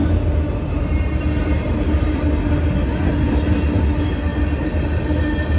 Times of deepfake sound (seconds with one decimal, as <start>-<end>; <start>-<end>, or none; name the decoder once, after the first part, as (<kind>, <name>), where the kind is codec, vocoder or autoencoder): 0.0-2.3 (vocoder, BigVGAN v2); 4.3-5.6

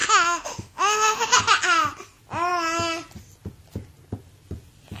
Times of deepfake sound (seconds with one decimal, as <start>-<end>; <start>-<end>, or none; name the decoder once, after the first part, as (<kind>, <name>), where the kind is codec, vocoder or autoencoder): 0.0-1.4 (autoencoder, DAC-VAE)

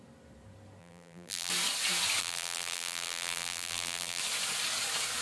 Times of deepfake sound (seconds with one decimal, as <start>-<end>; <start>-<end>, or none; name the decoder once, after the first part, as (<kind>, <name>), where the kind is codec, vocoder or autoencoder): 0.8-1.5 (vocoder, BigVGAN v2); 2.2-4.2